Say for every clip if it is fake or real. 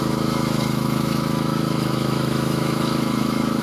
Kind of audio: fake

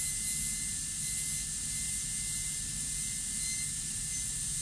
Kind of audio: real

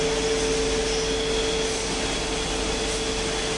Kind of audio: real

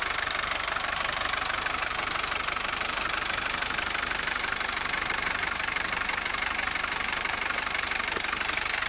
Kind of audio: fake